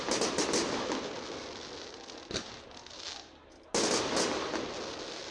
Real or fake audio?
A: real